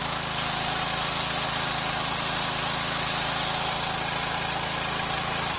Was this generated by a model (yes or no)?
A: no